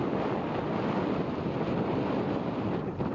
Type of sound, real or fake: real